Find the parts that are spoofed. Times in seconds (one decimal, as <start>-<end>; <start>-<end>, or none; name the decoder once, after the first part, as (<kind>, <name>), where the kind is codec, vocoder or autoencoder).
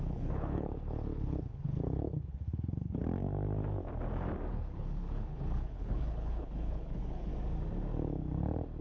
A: 0.0-3.0 (codec, HILCodec); 4.5-7.3